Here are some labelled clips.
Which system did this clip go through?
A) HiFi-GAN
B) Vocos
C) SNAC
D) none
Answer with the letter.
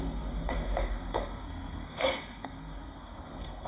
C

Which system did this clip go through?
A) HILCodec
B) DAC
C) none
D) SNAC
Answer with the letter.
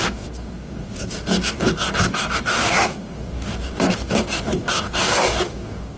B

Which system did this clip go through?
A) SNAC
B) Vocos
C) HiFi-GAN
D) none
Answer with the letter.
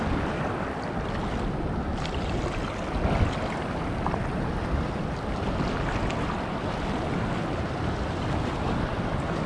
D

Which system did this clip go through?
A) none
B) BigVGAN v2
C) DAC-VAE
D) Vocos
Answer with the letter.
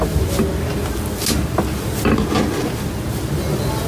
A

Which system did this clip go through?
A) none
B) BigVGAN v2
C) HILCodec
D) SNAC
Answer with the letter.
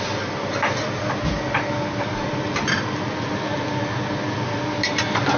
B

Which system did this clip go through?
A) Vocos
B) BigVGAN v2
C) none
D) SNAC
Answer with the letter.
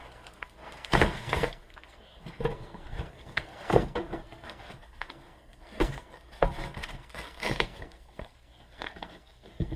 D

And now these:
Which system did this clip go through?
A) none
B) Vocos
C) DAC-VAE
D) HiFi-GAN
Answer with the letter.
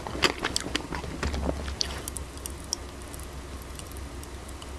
A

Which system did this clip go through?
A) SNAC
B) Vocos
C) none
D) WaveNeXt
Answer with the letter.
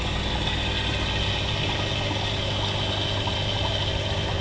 C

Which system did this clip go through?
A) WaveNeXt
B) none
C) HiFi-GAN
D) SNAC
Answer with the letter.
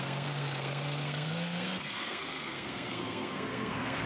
D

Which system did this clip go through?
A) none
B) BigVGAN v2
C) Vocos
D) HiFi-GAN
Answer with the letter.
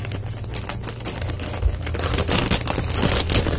A